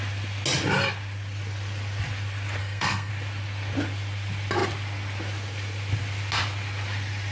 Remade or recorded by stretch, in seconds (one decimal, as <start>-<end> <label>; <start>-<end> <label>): 0.0-2.6 recorded; 2.6-3.1 remade; 3.1-7.3 recorded